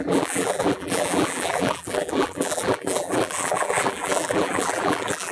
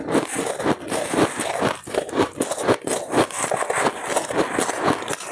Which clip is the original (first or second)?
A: second